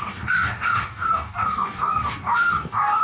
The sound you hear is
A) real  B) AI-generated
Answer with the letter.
B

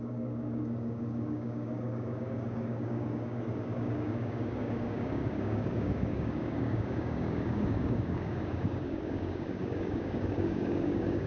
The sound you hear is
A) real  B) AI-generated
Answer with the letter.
B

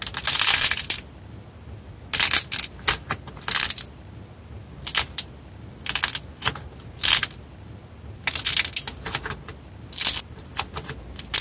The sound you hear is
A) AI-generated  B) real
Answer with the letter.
B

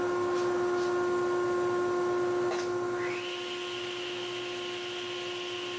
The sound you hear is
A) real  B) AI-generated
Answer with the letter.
A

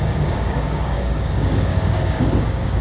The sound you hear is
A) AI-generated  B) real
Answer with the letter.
A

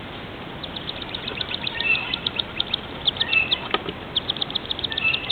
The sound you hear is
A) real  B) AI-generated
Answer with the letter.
A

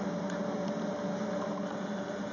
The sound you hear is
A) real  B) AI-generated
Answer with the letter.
A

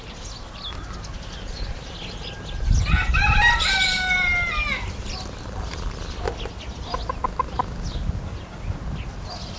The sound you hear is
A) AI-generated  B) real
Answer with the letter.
B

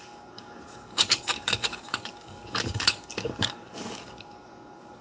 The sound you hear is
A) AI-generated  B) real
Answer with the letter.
A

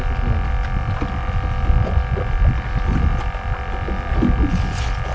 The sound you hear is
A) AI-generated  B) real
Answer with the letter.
B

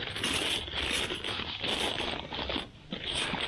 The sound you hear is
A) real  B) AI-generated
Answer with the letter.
A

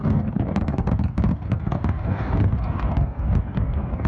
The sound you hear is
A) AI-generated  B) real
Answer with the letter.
A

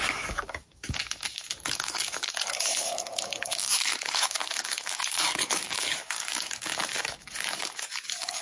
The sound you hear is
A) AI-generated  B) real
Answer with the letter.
A